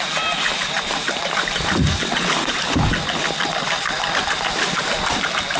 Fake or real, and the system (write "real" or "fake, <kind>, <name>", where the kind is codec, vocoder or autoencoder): real